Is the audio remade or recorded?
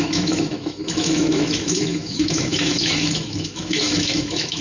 remade